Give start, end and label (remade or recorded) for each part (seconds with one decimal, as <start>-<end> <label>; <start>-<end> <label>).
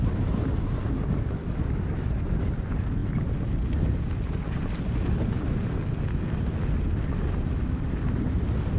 0.0-8.8 recorded